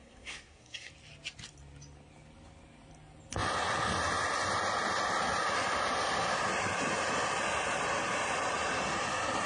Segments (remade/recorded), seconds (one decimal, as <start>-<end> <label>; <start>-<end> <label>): 0.0-0.9 remade; 0.9-9.5 recorded